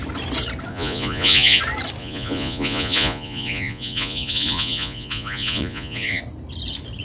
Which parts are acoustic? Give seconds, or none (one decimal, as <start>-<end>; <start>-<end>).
0.0-0.7; 1.6-2.0; 6.2-7.0